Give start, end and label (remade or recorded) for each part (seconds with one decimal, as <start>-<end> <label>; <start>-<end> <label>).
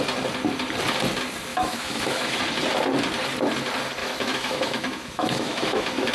0.0-1.5 recorded; 1.5-2.4 remade; 2.4-4.0 recorded; 4.0-6.1 remade